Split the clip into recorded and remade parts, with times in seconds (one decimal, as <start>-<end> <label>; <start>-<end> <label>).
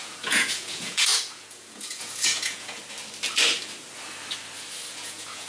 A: 0.0-2.8 remade; 2.8-4.9 recorded; 4.9-5.5 remade